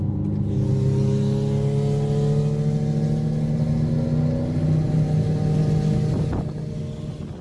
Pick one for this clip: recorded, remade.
recorded